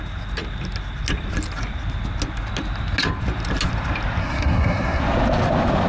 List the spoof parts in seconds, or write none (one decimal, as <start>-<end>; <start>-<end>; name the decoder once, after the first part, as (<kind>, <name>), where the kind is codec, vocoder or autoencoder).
4.2-5.0 (codec, SNAC)